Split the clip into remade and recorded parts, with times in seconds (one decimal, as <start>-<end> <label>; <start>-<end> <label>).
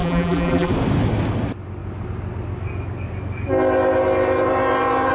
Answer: 0.0-0.7 remade; 0.7-5.1 recorded